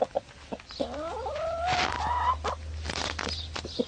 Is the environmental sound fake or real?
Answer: real